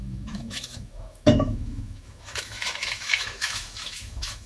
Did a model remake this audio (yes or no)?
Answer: yes